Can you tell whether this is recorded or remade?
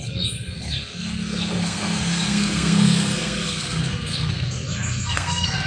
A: remade